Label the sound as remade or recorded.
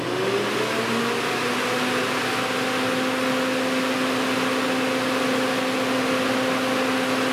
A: recorded